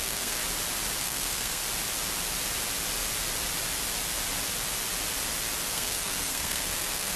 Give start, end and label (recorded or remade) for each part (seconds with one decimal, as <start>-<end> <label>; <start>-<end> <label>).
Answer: 0.0-0.4 remade; 0.4-1.0 recorded; 1.0-1.6 remade; 1.6-5.7 recorded; 5.7-7.2 remade